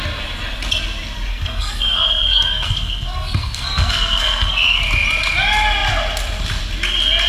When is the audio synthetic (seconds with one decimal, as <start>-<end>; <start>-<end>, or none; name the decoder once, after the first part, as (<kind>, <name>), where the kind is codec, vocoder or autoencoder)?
1.3-4.8 (codec, SNAC)